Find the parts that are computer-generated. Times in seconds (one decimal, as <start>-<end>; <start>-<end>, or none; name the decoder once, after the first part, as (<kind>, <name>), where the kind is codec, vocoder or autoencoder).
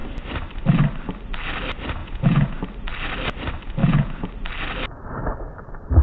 2.0-2.6 (vocoder, Vocos); 3.8-4.3